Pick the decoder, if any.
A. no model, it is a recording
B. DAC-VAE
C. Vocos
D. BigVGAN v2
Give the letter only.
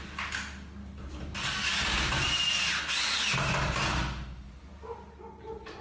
A